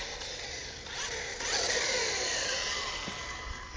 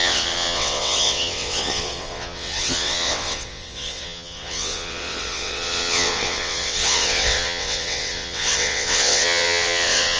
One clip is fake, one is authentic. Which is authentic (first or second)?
first